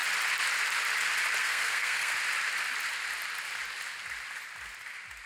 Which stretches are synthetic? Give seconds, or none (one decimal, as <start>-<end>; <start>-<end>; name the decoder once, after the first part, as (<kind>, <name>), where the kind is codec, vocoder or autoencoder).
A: 1.4-2.1 (codec, SNAC)